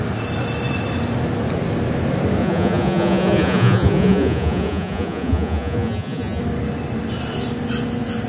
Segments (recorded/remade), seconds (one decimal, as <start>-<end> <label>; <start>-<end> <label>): 0.0-2.4 recorded; 2.4-6.4 remade; 6.4-8.3 recorded